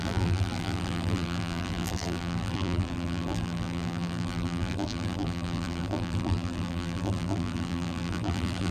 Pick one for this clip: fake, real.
fake